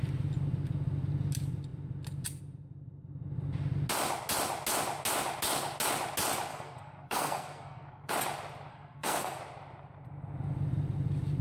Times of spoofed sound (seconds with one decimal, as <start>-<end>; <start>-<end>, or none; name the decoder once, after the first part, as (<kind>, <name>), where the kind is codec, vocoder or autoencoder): 6.5-8.1 (codec, SNAC); 8.7-9.4